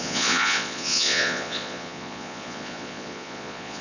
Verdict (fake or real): fake